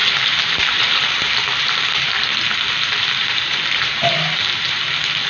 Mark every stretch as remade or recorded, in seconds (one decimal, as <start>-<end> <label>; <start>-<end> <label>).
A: 0.0-2.2 remade; 2.2-3.2 recorded; 3.2-4.8 remade; 4.8-5.3 recorded